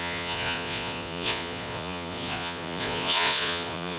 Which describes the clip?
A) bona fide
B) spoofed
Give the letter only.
B